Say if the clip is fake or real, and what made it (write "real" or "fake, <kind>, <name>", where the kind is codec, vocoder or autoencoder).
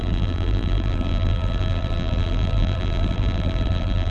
fake, vocoder, BigVGAN v2